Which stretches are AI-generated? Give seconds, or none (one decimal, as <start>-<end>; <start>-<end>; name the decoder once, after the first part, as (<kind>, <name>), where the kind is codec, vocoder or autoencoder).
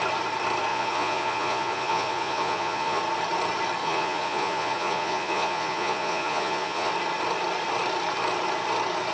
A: 0.7-3.0 (vocoder, Vocos); 3.8-6.9